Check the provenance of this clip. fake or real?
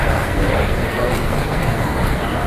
fake